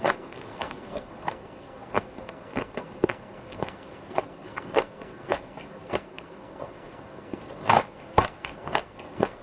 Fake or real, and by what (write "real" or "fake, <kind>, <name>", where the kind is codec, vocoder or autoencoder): fake, codec, SNAC